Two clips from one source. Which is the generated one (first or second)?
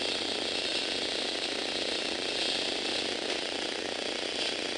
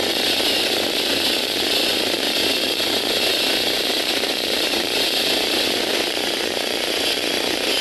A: second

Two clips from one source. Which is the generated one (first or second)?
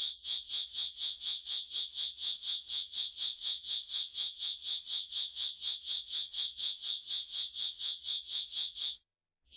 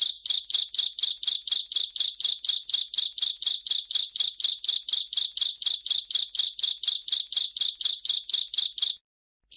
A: first